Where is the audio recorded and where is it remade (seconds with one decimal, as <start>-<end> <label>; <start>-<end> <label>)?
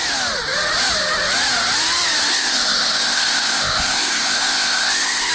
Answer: 0.0-2.3 recorded; 2.3-5.3 remade